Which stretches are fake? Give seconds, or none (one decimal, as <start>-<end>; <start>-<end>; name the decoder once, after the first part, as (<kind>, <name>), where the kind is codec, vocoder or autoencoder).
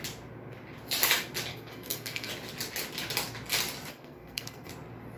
1.5-2.3 (codec, SNAC); 3.9-4.7